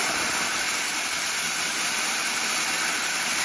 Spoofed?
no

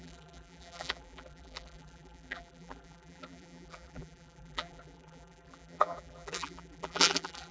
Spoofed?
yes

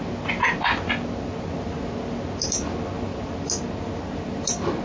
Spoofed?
no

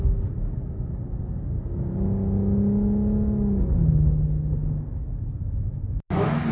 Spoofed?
no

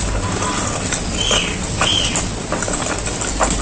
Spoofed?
no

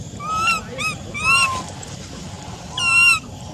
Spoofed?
yes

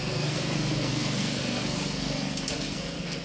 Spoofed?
yes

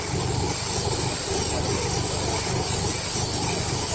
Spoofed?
no